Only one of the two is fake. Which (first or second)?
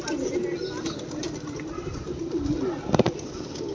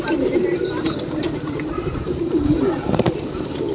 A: second